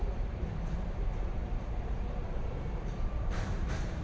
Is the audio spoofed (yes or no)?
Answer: yes